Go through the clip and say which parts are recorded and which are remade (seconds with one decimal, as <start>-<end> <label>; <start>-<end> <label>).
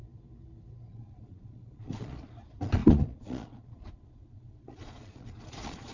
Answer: 0.0-0.9 recorded; 0.9-5.9 remade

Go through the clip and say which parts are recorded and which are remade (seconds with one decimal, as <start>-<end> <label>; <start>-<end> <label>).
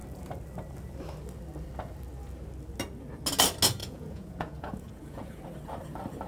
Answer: 0.0-3.8 recorded; 3.8-5.4 remade; 5.4-6.3 recorded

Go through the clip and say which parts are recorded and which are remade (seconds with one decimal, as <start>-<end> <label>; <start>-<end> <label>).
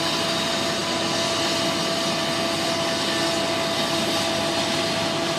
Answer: 0.0-5.4 recorded